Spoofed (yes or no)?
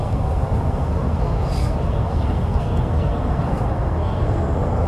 yes